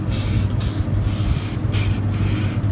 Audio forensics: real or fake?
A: real